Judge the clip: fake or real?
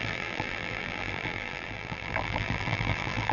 fake